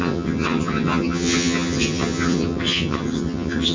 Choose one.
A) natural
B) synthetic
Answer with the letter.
B